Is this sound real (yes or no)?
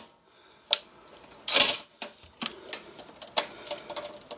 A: no